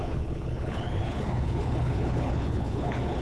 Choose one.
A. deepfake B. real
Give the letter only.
A